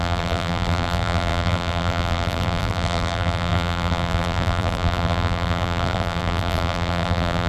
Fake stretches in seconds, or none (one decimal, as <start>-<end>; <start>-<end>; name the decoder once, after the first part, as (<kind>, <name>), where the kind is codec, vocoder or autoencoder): 0.0-7.5 (vocoder, BigVGAN v2)